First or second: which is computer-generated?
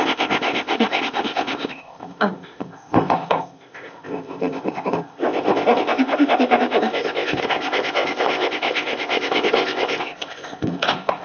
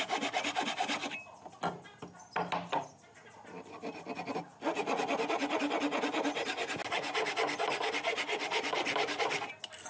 first